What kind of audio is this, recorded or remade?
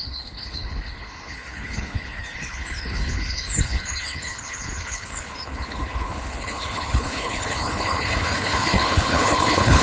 remade